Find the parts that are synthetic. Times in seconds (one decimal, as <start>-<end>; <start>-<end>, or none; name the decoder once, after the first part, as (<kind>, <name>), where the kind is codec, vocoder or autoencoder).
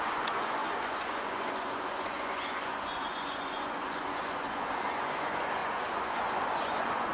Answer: 0.0-7.1 (vocoder, Vocos)